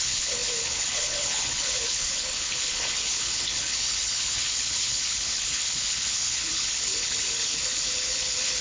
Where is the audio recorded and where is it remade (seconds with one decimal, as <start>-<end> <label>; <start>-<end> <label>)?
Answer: 0.0-8.6 remade